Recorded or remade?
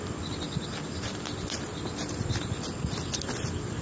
recorded